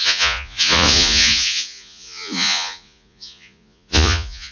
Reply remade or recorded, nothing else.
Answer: remade